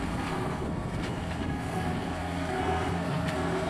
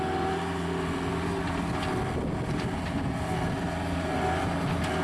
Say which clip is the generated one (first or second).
first